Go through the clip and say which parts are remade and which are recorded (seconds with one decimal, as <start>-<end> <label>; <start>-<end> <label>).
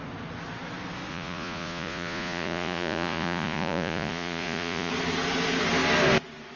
0.0-1.1 recorded; 1.1-4.9 remade; 4.9-6.6 recorded